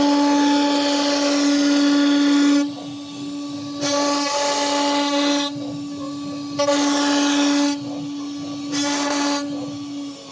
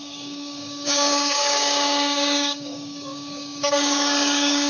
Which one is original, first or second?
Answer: first